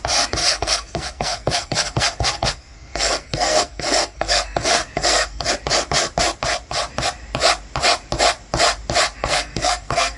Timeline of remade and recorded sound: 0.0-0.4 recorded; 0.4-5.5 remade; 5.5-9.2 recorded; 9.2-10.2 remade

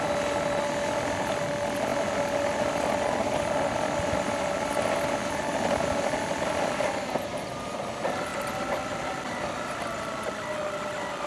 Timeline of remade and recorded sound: 0.0-11.3 recorded

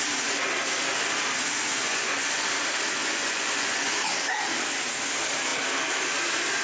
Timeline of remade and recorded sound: 0.0-1.7 recorded; 1.7-2.4 remade; 2.4-3.0 recorded; 3.0-4.0 remade; 4.0-6.6 recorded

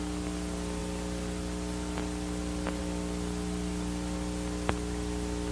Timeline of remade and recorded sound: 0.0-5.5 recorded

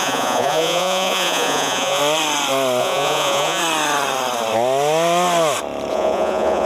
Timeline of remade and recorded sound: 0.0-2.0 remade; 2.0-2.8 recorded; 2.8-3.6 remade; 3.6-5.9 recorded; 5.9-6.7 remade

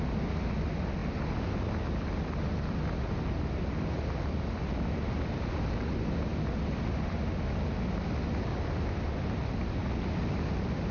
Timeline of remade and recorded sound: 0.0-10.9 recorded